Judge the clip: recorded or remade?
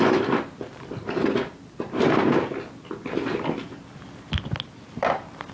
recorded